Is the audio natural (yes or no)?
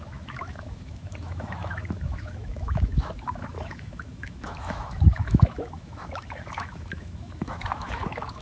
no